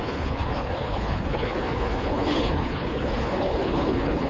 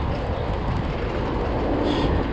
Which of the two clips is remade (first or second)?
first